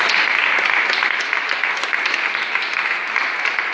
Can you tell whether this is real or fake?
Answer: real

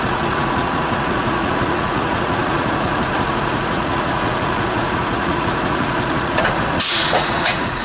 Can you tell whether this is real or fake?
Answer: fake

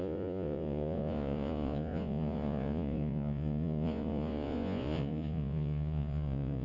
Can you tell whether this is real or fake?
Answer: fake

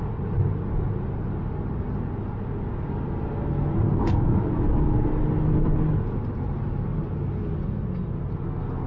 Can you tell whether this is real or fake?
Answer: real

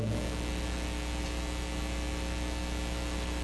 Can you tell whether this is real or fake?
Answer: real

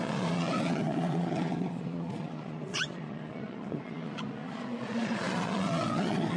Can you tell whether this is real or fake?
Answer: fake